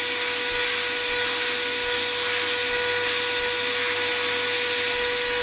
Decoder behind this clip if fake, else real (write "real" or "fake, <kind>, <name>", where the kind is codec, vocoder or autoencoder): real